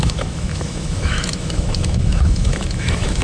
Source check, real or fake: fake